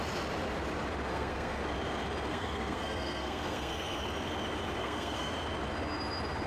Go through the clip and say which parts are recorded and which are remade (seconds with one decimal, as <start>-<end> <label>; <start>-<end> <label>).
0.0-1.1 recorded; 1.1-1.6 remade; 1.6-2.3 recorded; 2.3-4.0 remade; 4.0-4.8 recorded; 4.8-5.3 remade; 5.3-6.5 recorded